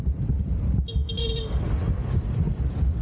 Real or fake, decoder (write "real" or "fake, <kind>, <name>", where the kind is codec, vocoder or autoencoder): real